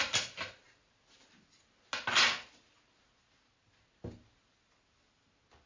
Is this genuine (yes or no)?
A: yes